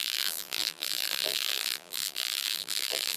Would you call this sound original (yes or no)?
no